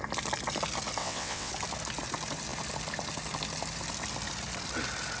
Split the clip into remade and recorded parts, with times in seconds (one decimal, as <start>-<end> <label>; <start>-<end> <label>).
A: 0.0-1.0 recorded; 1.0-1.5 remade; 1.5-5.2 recorded